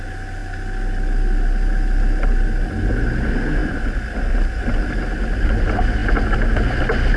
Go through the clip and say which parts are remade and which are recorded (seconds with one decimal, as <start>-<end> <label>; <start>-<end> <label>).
0.0-7.2 recorded